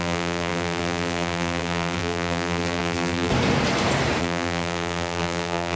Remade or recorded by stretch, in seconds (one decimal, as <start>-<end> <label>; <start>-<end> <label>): 0.0-3.3 remade; 3.3-4.2 recorded; 4.2-5.8 remade